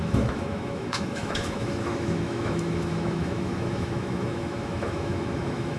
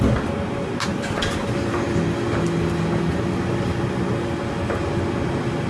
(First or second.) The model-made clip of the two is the first